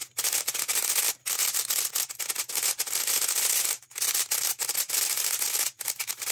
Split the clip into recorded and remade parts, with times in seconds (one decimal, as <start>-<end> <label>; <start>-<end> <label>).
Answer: 0.0-6.3 recorded